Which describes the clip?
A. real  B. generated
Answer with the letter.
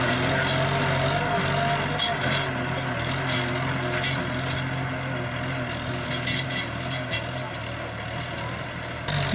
A